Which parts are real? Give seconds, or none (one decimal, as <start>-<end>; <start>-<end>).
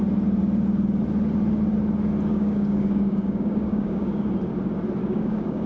0.0-2.3; 4.3-5.0